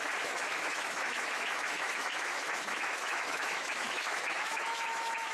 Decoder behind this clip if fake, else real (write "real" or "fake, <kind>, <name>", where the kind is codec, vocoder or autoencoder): fake, autoencoder, DAC-VAE